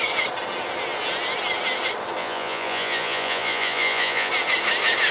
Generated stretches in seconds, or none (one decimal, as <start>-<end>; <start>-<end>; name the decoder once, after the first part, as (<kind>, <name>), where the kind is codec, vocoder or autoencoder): 2.2-4.3 (vocoder, Vocos)